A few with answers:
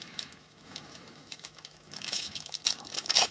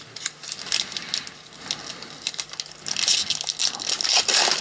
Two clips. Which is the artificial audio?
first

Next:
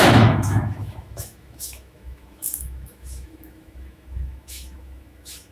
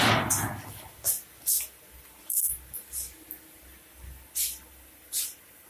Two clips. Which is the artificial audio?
first